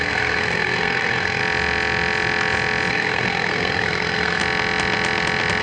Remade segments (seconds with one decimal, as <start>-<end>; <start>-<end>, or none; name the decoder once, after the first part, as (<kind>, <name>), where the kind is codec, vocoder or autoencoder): 0.0-1.4 (codec, SNAC); 2.9-4.4

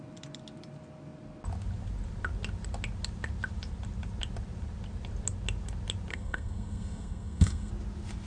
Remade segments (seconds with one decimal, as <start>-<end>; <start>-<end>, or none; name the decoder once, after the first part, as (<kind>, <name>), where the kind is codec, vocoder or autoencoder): 6.1-7.7 (codec, SNAC)

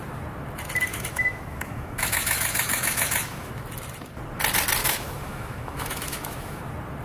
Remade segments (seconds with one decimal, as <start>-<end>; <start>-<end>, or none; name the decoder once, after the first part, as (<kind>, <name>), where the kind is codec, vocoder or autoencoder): 0.9-3.5 (autoencoder, DAC-VAE); 4.8-6.6